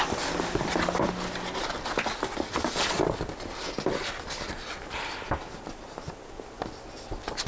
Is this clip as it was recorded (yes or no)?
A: yes